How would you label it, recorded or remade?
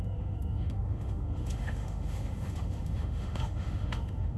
remade